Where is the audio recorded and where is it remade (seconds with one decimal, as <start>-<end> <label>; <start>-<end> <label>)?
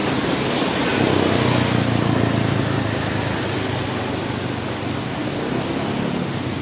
0.0-6.6 recorded